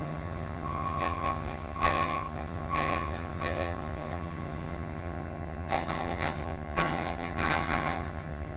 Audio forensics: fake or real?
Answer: fake